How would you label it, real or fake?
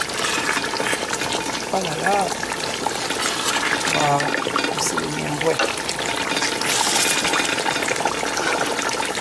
real